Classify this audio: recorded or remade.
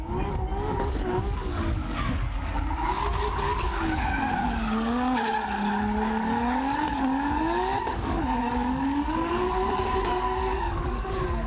remade